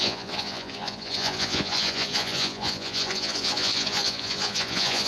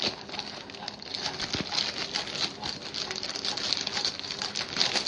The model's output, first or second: first